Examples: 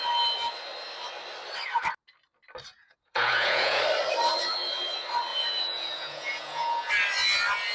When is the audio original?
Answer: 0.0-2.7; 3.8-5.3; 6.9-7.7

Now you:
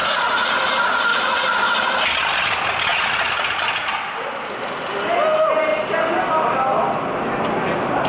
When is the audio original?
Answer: 0.5-1.1; 1.6-2.9; 3.9-8.1

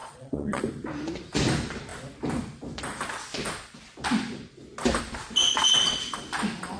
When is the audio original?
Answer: 0.6-6.8

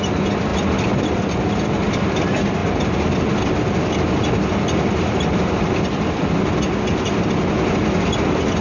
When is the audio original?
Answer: 0.0-8.6